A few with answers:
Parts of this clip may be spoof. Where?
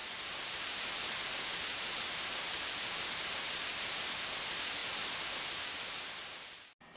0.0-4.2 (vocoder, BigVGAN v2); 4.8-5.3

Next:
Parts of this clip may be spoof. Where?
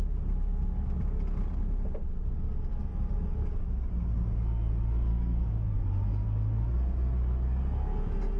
5.1-5.8 (codec, SNAC)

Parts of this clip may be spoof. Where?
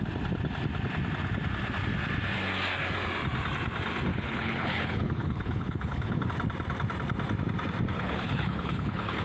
4.1-6.3 (codec, HILCodec); 7.9-9.2